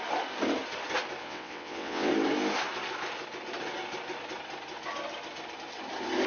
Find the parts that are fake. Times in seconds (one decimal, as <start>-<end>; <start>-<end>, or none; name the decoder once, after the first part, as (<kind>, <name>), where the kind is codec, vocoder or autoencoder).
1.2-2.1 (vocoder, WaveNeXt)